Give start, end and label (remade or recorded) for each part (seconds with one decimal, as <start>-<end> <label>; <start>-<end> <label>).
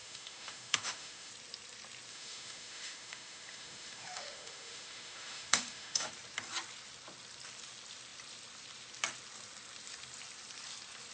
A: 0.0-1.3 remade; 1.3-2.1 recorded; 2.1-6.1 remade; 6.1-11.1 recorded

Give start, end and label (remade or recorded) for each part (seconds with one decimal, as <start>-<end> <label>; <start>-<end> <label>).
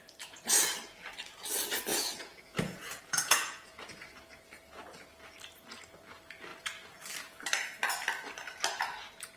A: 0.0-1.9 recorded; 1.9-4.1 remade; 4.1-9.4 recorded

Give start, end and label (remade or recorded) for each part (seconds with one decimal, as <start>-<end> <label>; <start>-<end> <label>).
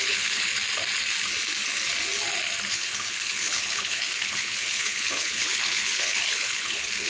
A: 0.0-0.5 remade; 0.5-2.7 recorded; 2.7-7.1 remade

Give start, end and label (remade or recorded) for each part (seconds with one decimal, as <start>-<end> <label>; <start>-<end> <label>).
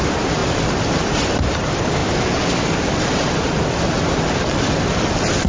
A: 0.0-0.4 remade; 0.4-1.3 recorded; 1.3-2.0 remade; 2.0-2.6 recorded; 2.6-5.5 remade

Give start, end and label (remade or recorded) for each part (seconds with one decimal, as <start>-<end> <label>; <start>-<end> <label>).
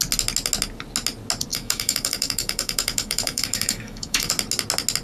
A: 0.0-1.5 recorded; 1.5-4.3 remade; 4.3-5.0 recorded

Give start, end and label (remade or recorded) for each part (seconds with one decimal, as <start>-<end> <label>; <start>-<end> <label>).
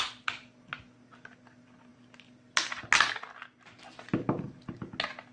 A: 0.0-5.3 recorded